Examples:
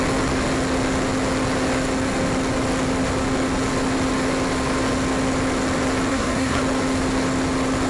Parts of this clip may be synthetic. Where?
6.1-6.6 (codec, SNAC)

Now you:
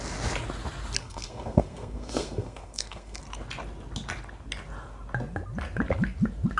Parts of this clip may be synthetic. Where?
1.0-3.2 (codec, SNAC)

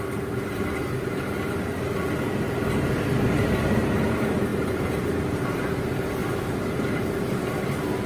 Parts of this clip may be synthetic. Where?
0.0-1.7 (vocoder, BigVGAN v2); 3.7-8.1

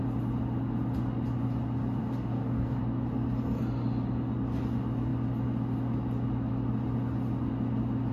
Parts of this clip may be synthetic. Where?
2.0-2.8 (codec, DAC)

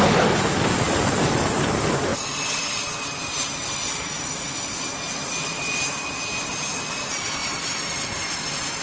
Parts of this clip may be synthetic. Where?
none

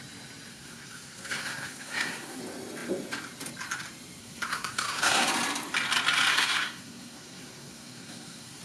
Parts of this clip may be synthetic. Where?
0.5-2.4 (codec, SNAC); 4.2-5.3; 6.3-8.6